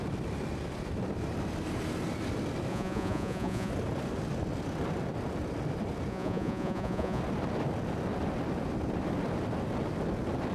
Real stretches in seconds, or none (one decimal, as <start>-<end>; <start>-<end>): 0.0-2.7; 3.7-6.1; 7.2-10.5